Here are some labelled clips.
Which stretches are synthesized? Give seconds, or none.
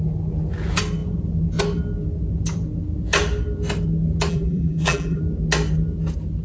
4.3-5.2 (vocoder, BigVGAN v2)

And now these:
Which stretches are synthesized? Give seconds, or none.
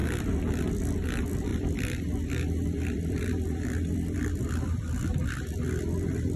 0.0-0.6 (vocoder, BigVGAN v2); 1.5-5.3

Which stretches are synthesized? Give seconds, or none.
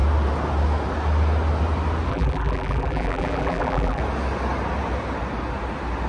2.1-4.0 (vocoder, BigVGAN v2)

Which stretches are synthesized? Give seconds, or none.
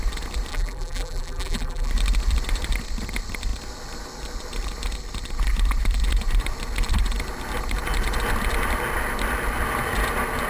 0.5-1.9 (vocoder, BigVGAN v2)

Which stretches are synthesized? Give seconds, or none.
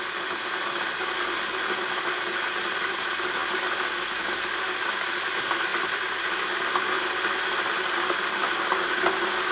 none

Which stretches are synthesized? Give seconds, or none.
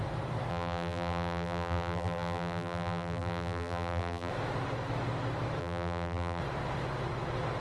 0.5-4.3 (vocoder, BigVGAN v2); 5.6-6.4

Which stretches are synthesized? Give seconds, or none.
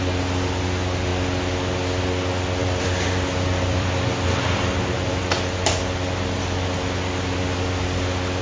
2.6-5.1 (vocoder, BigVGAN v2)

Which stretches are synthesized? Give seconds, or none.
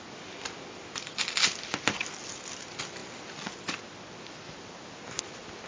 none